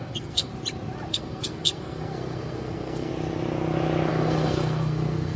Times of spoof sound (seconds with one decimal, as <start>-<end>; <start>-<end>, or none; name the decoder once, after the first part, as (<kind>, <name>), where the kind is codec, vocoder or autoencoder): 0.0-0.5 (codec, SNAC); 1.1-3.1; 4.1-5.4